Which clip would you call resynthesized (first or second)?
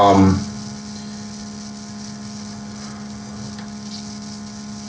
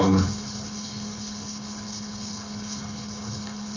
second